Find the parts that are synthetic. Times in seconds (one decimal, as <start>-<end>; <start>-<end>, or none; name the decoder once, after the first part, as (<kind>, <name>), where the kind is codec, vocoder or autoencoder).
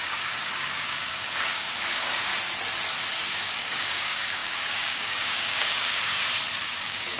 0.0-2.3 (codec, DAC); 3.3-6.1; 6.6-7.2